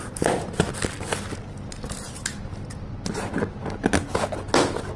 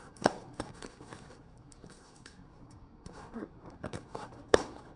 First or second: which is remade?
second